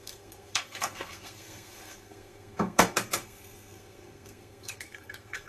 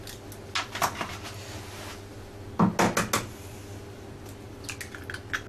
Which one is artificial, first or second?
first